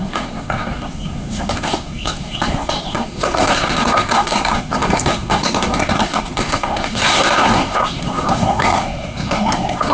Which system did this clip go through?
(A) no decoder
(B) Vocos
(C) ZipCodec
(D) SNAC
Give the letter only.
D